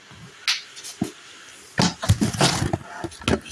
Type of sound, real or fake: real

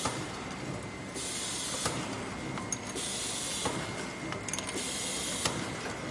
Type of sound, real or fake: real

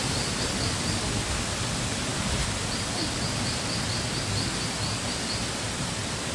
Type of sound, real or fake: real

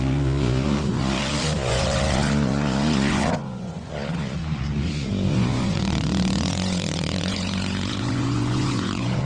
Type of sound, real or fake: fake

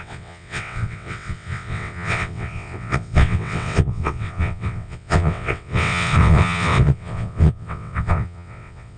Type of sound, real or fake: fake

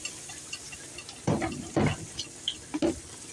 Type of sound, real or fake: real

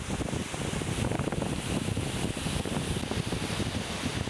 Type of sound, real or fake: real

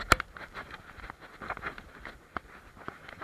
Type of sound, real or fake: real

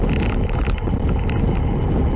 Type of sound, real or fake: real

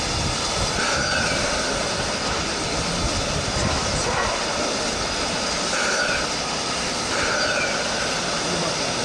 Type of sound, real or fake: real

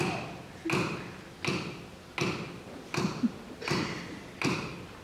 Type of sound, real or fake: real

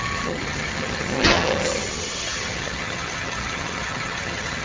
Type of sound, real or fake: fake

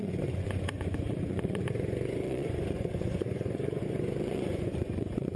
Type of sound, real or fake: fake